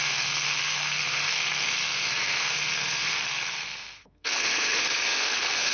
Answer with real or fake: fake